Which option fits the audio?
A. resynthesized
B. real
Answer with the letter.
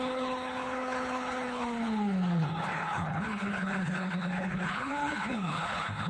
A